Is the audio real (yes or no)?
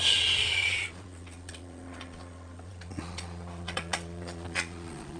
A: no